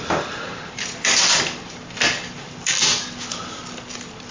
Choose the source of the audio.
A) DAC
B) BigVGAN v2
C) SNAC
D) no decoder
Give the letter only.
D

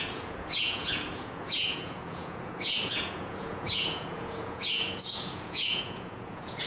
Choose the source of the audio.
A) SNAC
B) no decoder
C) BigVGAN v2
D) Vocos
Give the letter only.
D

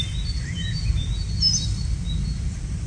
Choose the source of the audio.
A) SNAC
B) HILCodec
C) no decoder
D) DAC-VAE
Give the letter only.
C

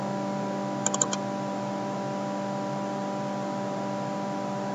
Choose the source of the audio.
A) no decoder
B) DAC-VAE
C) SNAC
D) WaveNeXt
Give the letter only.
A